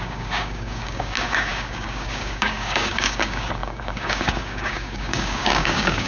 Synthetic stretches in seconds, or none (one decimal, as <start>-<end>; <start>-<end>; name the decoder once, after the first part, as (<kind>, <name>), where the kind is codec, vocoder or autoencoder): 0.0-6.1 (codec, DAC)